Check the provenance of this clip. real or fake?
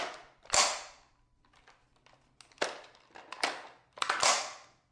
real